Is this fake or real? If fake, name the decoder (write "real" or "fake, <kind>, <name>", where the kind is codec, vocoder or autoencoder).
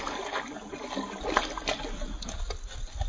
real